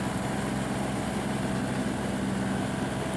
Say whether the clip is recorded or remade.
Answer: recorded